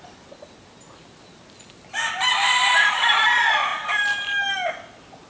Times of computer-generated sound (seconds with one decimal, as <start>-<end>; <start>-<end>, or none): none